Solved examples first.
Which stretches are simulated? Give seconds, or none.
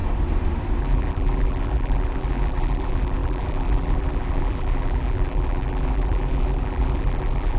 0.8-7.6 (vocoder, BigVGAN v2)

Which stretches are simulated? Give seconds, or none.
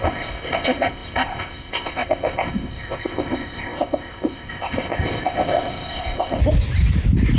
0.0-6.4 (codec, ZipCodec)